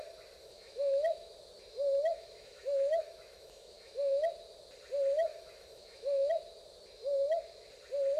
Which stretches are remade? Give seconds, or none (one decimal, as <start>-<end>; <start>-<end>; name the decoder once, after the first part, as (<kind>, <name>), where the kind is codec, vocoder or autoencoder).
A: 0.4-1.3 (autoencoder, DAC-VAE); 2.0-4.3; 5.3-6.3